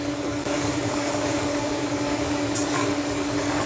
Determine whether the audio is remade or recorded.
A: remade